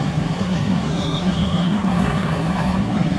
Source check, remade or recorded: remade